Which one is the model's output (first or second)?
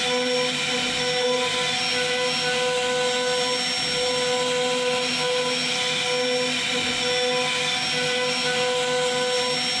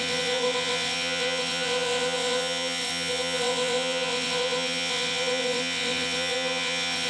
second